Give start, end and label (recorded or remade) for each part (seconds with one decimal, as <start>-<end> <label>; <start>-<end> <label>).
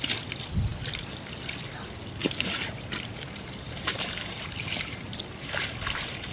0.0-2.2 recorded; 2.2-6.3 remade